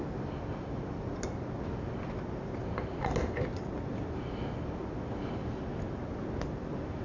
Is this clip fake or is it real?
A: real